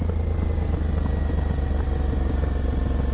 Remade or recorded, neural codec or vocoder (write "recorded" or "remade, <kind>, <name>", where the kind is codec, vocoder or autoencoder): recorded